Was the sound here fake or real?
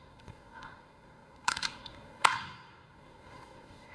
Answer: fake